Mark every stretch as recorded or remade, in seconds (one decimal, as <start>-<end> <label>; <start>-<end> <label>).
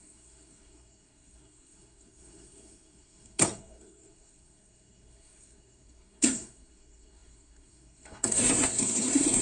0.0-9.4 remade